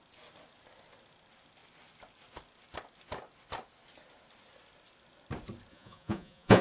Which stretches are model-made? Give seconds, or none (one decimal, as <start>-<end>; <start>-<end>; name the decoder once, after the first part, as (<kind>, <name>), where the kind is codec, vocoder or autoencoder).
5.7-6.6 (vocoder, Vocos)